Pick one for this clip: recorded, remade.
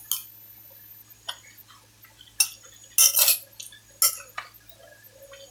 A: recorded